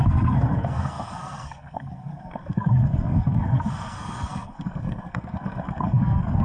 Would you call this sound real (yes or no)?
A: no